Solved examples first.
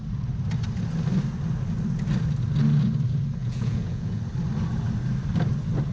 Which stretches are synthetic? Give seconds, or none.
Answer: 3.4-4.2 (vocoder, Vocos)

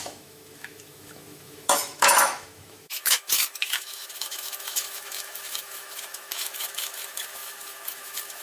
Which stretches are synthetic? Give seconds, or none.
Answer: 0.0-8.4 (autoencoder, DAC-VAE)

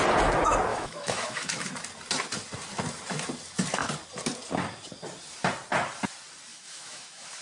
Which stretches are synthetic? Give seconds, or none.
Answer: 0.7-1.7 (autoencoder, DAC-VAE); 6.5-7.4

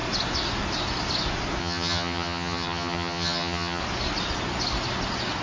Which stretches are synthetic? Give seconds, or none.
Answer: 1.6-3.8 (vocoder, HiFi-GAN)

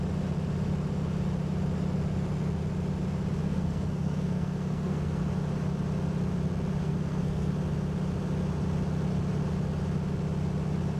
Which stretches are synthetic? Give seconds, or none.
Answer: 3.4-5.3 (codec, SNAC); 6.8-7.5

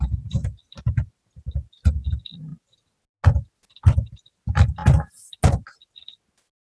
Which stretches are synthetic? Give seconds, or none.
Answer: none

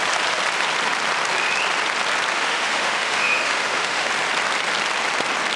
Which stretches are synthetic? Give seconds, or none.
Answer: 2.3-4.1 (autoencoder, DAC-VAE)

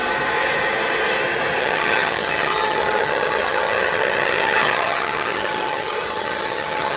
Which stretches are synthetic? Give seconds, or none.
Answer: 1.6-7.0 (vocoder, HiFi-GAN)